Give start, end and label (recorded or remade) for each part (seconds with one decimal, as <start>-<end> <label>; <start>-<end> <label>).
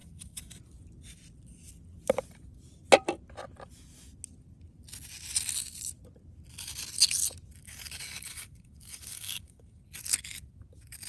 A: 0.0-0.6 remade; 0.6-7.6 recorded; 7.6-9.8 remade; 9.8-11.1 recorded